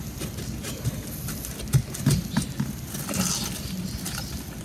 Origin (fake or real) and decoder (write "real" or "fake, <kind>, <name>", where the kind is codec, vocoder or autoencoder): real